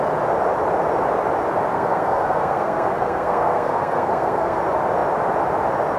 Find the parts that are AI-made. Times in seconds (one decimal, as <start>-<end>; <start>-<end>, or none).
1.7-4.6